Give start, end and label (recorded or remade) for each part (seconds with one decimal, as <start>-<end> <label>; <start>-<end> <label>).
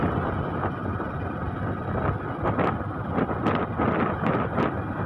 0.0-5.1 recorded